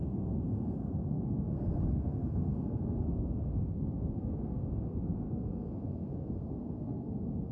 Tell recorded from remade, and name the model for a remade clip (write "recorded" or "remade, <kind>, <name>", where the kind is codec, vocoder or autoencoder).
remade, codec, SNAC